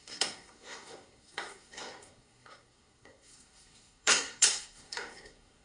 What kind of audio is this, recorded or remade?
remade